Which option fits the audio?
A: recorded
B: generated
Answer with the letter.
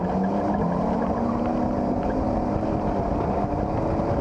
A